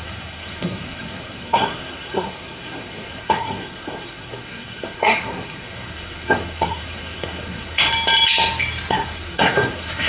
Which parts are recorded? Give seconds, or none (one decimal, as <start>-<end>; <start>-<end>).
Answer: 7.9-8.9